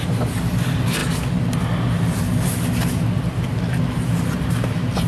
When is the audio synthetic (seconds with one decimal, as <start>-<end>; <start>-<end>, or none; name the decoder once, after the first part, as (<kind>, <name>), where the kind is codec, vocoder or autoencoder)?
none